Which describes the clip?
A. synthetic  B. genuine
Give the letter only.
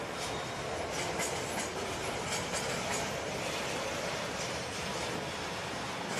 B